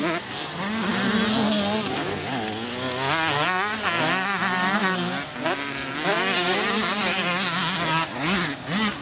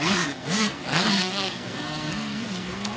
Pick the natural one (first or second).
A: first